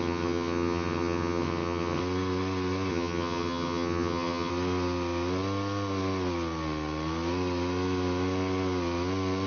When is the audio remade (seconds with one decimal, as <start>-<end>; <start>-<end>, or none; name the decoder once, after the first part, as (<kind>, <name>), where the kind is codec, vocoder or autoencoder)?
0.0-2.0 (vocoder, HiFi-GAN); 2.9-4.5